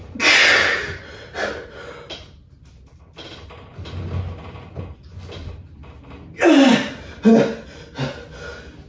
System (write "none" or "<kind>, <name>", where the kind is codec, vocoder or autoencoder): none